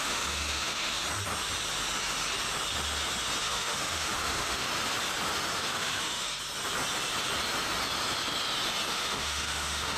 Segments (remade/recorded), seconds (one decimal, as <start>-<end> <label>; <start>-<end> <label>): 0.0-1.0 remade; 1.0-3.4 recorded; 3.4-4.7 remade; 4.7-5.6 recorded; 5.6-6.3 remade; 6.3-8.9 recorded; 8.9-10.0 remade